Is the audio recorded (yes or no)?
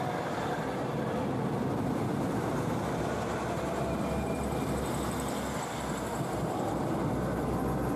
yes